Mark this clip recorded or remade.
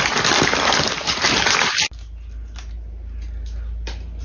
recorded